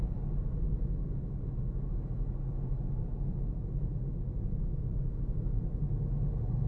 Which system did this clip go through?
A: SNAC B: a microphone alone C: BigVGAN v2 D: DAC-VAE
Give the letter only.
B